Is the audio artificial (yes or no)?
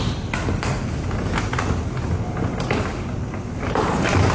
no